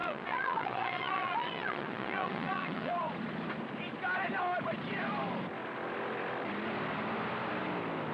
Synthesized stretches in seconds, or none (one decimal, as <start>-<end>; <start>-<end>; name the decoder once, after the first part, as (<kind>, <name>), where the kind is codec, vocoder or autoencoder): 0.0-2.9 (vocoder, Vocos)